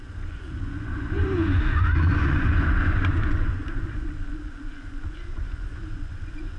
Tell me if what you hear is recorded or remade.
remade